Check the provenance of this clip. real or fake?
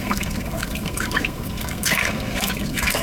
fake